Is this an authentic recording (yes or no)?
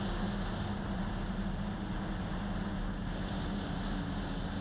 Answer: yes